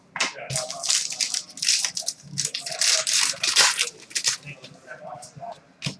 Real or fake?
real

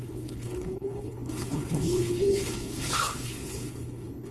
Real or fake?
fake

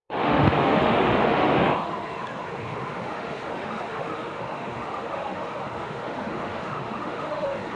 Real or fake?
fake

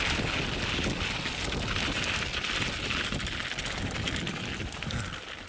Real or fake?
real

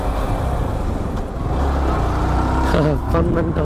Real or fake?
real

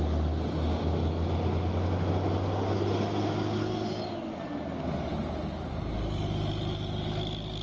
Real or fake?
real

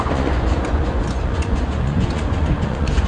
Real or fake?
fake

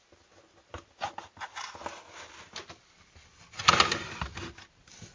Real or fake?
real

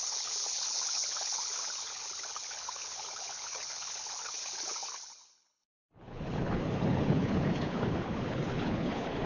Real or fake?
fake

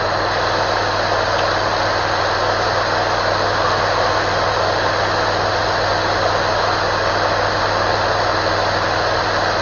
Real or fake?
real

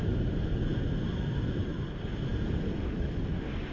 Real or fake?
real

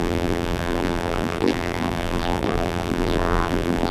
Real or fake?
fake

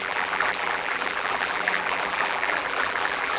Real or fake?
fake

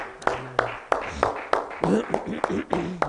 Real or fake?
real